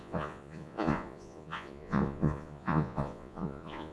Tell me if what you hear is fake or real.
fake